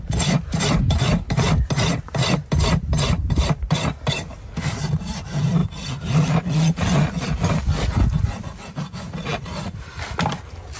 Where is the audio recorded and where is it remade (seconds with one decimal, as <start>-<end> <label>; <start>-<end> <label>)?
0.0-10.8 recorded